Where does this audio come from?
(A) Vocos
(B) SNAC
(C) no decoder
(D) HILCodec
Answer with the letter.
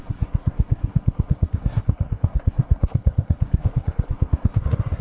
B